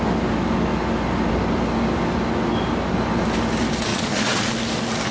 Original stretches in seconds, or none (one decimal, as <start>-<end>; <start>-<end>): 0.0-3.9; 4.5-5.1